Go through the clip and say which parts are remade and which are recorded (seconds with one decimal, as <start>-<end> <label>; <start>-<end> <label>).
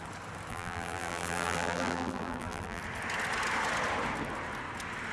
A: 0.0-0.5 recorded; 0.5-2.8 remade; 2.8-5.1 recorded